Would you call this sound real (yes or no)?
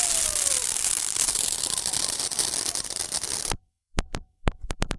no